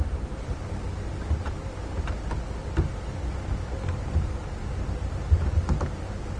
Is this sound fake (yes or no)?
no